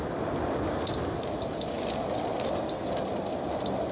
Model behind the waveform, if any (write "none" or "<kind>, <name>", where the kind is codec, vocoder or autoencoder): none